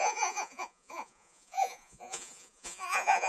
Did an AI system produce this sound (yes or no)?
yes